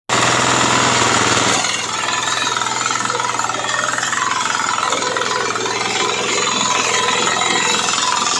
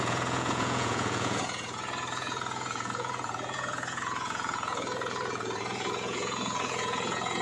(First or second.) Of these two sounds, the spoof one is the second